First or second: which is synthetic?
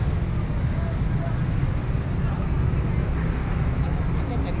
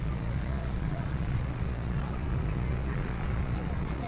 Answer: second